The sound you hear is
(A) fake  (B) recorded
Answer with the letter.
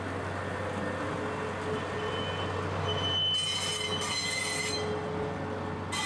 B